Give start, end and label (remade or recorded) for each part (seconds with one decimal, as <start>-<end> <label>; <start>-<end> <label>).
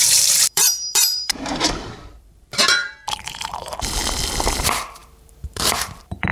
0.0-4.0 remade; 4.0-4.6 recorded; 4.6-6.3 remade